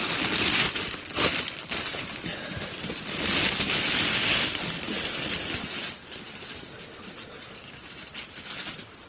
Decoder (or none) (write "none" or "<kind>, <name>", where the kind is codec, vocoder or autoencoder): none